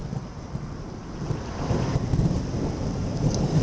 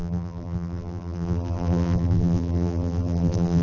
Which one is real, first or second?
first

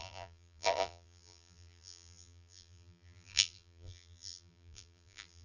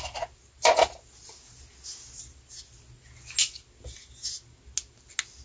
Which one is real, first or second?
second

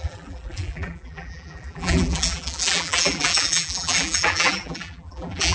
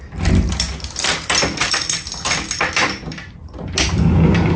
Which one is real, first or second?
second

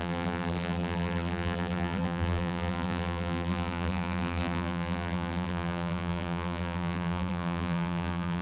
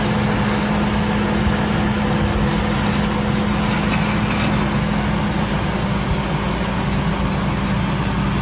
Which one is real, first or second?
second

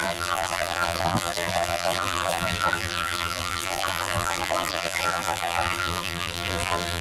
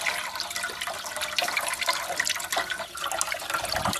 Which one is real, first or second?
second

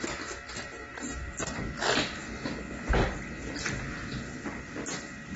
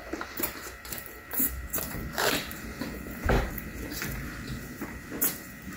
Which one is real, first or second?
first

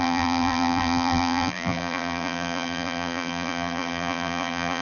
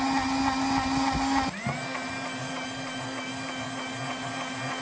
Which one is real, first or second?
second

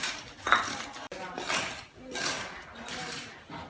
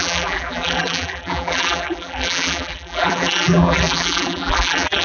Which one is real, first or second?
first